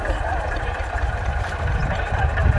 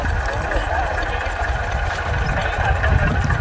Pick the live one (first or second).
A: second